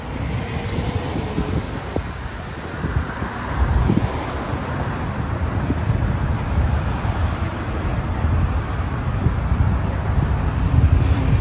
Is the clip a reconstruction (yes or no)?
yes